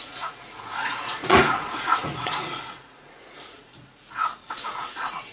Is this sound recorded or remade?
remade